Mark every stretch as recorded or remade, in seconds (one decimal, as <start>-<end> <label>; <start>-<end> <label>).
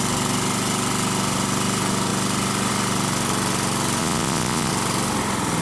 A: 0.0-4.0 recorded; 4.0-4.7 remade; 4.7-5.6 recorded